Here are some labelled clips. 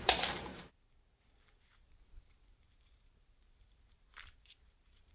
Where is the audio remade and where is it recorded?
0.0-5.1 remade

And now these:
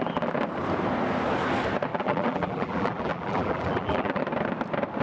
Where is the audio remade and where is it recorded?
0.0-1.9 recorded; 1.9-4.2 remade; 4.2-5.0 recorded

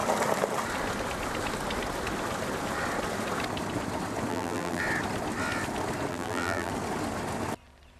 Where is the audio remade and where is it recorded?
0.0-4.3 recorded; 4.3-4.8 remade; 4.8-6.1 recorded; 6.1-6.7 remade; 6.7-8.0 recorded

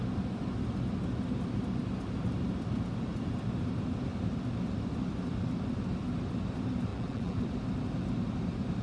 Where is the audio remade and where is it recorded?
0.0-6.9 recorded; 6.9-7.4 remade; 7.4-8.8 recorded

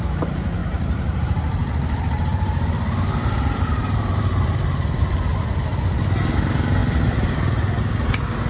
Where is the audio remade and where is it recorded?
0.0-0.6 recorded; 0.6-1.2 remade; 1.2-1.6 recorded; 1.6-5.5 remade; 5.5-8.5 recorded